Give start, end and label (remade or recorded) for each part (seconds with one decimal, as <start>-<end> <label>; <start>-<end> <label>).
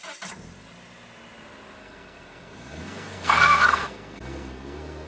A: 0.0-1.8 recorded; 1.8-5.1 remade